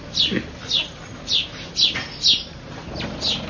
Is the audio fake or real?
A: real